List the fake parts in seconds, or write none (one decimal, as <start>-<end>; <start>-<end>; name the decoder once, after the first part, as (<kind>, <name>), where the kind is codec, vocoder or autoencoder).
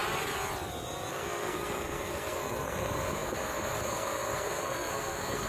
1.1-5.5 (codec, SNAC)